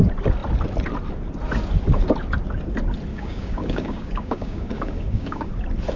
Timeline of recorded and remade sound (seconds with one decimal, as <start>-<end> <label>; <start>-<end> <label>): 0.0-3.1 recorded; 3.1-5.5 remade; 5.5-6.0 recorded